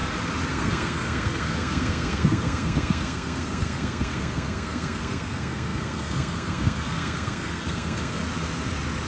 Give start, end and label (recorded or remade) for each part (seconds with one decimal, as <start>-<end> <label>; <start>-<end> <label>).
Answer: 0.0-0.5 recorded; 0.5-8.2 remade; 8.2-9.1 recorded